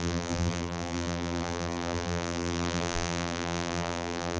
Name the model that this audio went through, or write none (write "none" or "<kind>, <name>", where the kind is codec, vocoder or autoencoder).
vocoder, BigVGAN v2